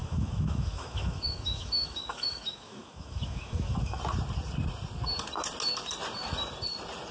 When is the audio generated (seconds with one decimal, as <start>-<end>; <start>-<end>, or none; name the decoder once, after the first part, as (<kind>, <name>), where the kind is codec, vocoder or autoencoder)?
0.0-4.0 (autoencoder, DAC-VAE)